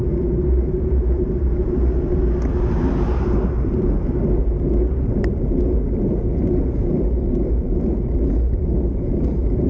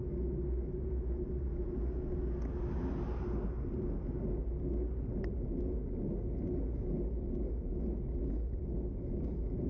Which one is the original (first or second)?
second